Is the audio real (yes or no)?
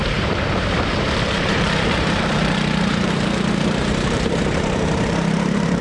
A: no